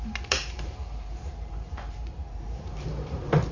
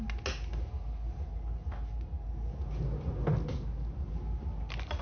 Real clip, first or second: second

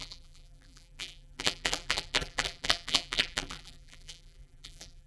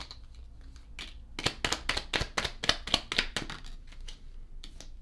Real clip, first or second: second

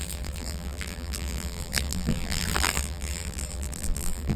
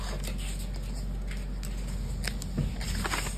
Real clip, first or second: second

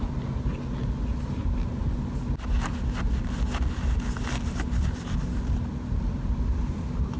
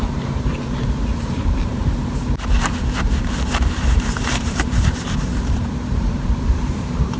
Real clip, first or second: first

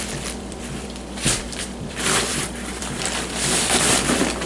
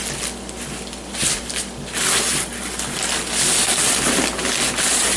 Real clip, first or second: second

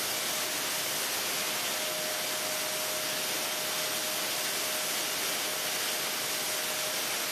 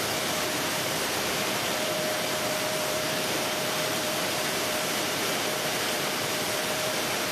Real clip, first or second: first